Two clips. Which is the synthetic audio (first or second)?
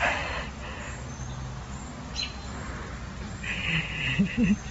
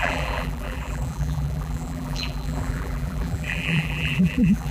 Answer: second